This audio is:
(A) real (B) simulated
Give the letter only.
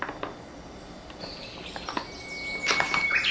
A